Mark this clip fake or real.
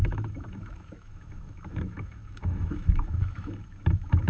fake